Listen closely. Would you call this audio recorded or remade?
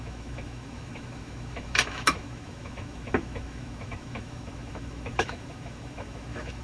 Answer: remade